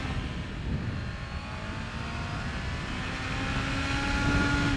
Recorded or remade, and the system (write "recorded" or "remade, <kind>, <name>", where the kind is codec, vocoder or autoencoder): recorded